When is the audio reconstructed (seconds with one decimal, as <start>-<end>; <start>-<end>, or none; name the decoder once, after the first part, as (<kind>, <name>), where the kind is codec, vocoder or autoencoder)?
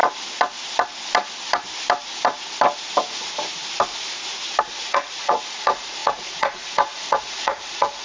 4.6-8.0 (vocoder, Vocos)